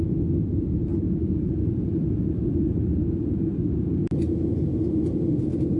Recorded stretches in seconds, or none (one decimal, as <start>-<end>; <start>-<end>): 0.0-5.8